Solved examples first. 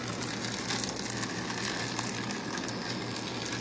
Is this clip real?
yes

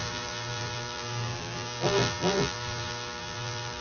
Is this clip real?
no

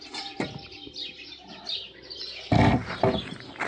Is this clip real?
no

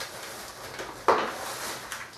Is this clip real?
yes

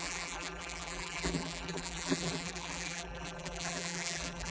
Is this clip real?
no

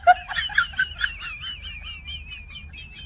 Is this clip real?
yes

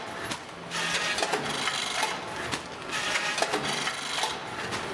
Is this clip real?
yes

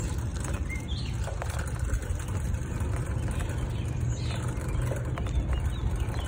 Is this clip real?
yes